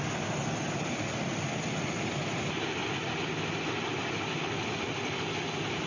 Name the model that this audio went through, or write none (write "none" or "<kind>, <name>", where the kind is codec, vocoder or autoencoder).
none